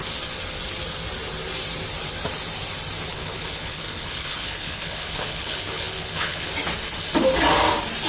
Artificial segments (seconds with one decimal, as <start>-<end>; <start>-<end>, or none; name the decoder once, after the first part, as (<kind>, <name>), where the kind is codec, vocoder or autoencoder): 3.1-6.5 (codec, HILCodec)